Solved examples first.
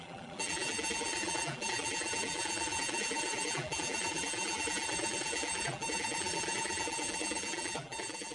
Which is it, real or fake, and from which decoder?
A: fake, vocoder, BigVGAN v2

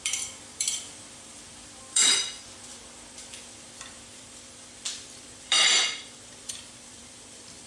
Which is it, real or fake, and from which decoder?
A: fake, vocoder, BigVGAN v2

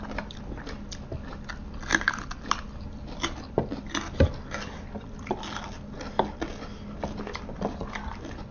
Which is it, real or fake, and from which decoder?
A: real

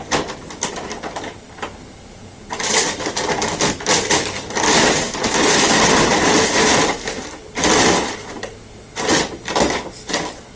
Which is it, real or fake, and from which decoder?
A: real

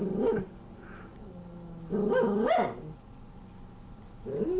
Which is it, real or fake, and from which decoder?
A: real